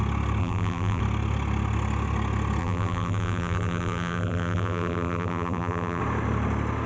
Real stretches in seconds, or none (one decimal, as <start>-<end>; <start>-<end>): 0.0-0.4; 1.0-2.6; 6.0-6.9